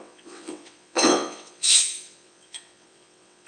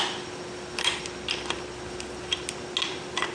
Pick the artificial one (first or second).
first